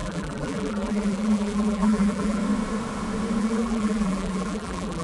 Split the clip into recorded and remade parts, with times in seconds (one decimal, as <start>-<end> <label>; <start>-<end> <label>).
0.0-2.4 remade; 2.4-3.4 recorded; 3.4-5.0 remade